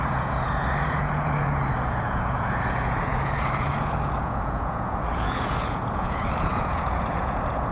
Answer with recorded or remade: remade